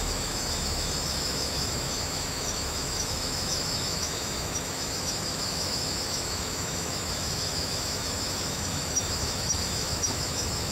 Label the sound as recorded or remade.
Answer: remade